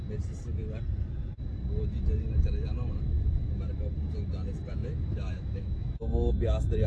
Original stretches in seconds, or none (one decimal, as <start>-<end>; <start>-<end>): 0.0-4.8; 6.3-6.9

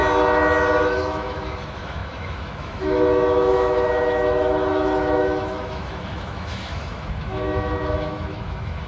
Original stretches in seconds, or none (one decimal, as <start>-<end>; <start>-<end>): 0.0-0.8

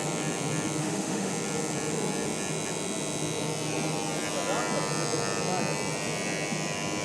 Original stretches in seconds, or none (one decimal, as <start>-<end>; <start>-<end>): 0.0-0.8; 1.3-7.0